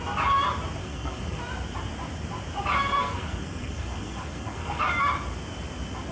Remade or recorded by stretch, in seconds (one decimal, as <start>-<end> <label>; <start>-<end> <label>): 0.0-0.8 recorded; 0.8-1.4 remade; 1.4-2.9 recorded; 2.9-4.8 remade; 4.8-6.1 recorded